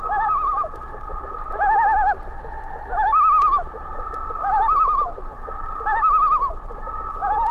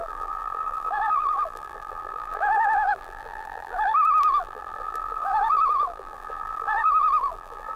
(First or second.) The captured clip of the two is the first